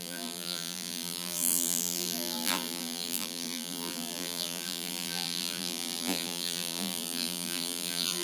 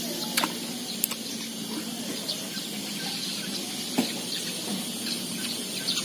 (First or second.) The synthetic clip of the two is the first